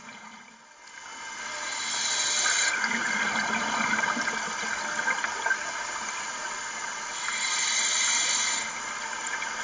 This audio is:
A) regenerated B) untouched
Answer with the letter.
A